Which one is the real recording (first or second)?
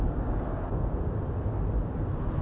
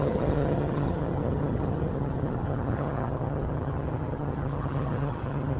first